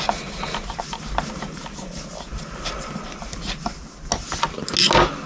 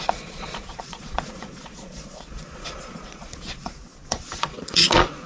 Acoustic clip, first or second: first